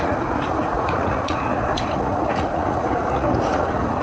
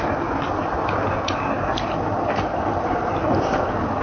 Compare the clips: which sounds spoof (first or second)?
first